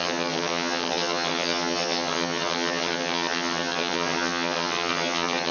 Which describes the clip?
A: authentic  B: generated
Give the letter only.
B